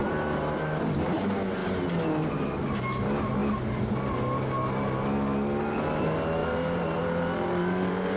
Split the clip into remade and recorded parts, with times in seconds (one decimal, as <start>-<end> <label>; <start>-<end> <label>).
0.0-1.2 remade; 1.2-6.4 recorded; 6.4-8.2 remade